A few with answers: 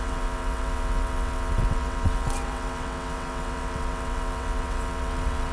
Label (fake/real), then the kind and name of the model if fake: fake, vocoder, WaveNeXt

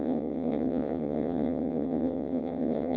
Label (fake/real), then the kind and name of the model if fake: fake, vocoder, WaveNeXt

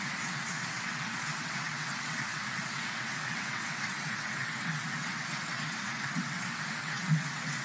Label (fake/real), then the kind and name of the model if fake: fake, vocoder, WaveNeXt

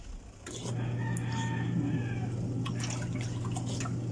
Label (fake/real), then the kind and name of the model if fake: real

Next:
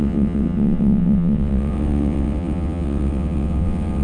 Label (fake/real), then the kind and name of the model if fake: fake, vocoder, WaveNeXt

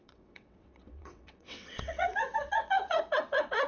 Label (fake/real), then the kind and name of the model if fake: fake, vocoder, WaveNeXt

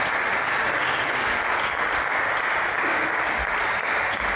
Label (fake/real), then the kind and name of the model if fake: real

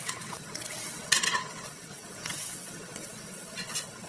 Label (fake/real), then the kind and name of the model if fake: fake, vocoder, WaveNeXt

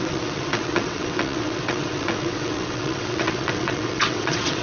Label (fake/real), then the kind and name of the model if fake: fake, vocoder, WaveNeXt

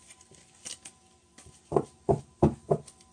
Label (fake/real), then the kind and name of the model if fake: real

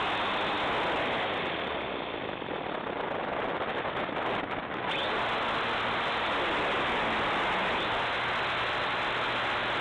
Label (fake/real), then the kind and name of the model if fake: real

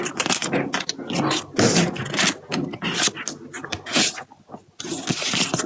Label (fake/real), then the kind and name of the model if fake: real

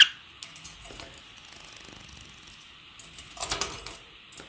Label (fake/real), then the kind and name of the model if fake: real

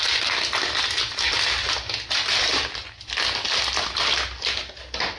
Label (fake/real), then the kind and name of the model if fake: real